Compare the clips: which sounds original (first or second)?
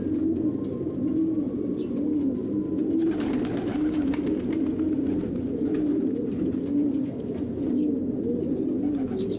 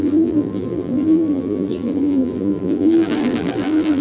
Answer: first